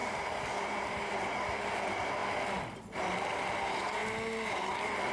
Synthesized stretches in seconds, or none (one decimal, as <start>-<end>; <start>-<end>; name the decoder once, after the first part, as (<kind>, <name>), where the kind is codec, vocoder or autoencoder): 0.0-2.2 (vocoder, BigVGAN v2); 2.8-4.0; 4.5-5.1